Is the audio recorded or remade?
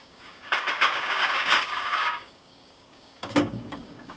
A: remade